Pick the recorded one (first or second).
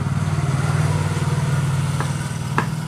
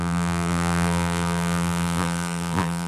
first